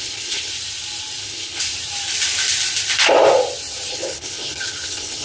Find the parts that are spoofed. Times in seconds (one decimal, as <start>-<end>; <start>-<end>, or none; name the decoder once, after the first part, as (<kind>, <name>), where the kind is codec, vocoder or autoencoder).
0.0-0.5 (codec, HILCodec); 1.2-1.6; 3.9-5.2